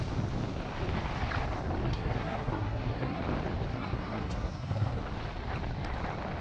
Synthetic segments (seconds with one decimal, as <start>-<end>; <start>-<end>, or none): 1.9-3.2; 3.7-5.0

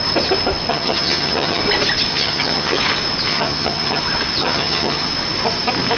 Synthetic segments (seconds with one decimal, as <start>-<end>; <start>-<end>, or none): 0.7-1.6; 2.1-2.8; 3.3-4.0; 4.4-5.1

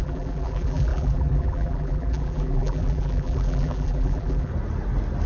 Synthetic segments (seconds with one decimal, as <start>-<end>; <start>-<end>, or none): 0.0-4.5

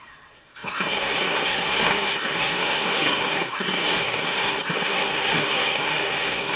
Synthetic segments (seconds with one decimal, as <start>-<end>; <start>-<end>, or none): 0.0-6.6

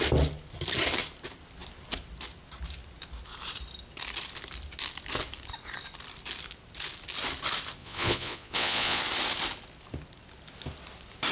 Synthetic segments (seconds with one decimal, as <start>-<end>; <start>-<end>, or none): 7.8-9.0

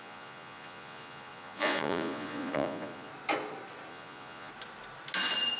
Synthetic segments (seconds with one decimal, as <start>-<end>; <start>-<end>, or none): 0.0-3.1; 3.9-4.5